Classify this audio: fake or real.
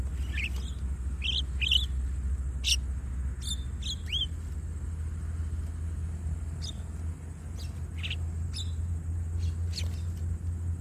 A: real